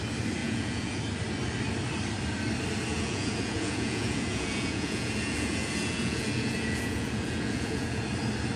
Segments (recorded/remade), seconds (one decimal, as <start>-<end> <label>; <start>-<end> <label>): 0.0-0.4 recorded; 0.4-1.0 remade; 1.0-2.9 recorded; 2.9-8.0 remade; 8.0-8.6 recorded